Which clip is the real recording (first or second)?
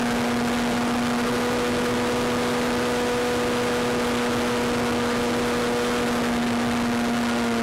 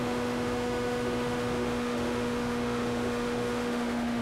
first